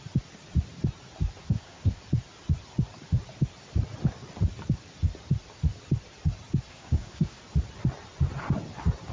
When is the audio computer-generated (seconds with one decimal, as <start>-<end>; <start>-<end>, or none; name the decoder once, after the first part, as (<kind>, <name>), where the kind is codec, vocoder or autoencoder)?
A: 1.4-2.0 (codec, SNAC); 6.7-7.4